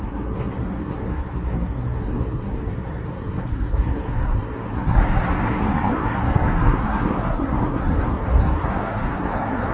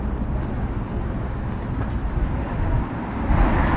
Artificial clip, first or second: first